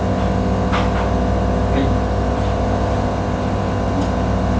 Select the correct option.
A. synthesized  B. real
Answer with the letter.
B